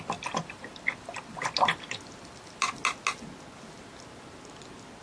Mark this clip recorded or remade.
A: recorded